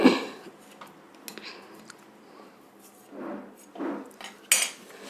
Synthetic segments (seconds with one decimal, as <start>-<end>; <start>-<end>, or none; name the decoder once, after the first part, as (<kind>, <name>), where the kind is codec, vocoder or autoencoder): none